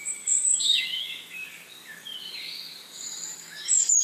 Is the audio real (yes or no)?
no